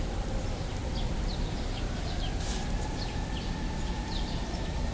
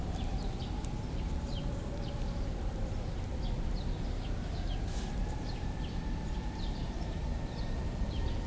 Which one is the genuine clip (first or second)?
second